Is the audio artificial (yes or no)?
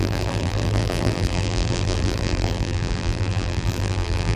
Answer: yes